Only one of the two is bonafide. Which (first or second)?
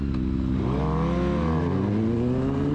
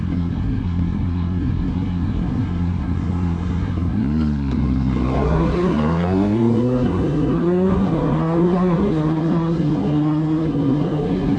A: first